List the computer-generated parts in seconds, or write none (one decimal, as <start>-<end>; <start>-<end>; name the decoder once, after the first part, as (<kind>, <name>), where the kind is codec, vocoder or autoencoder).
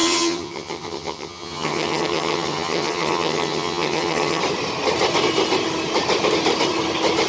0.0-4.4 (vocoder, HiFi-GAN)